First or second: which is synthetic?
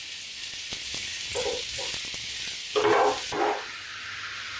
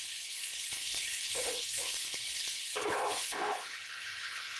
second